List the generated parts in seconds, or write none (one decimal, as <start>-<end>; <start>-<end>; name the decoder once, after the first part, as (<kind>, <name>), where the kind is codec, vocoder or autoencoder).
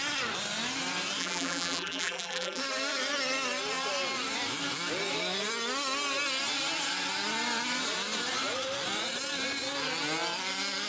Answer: 1.2-2.6 (vocoder, BigVGAN v2)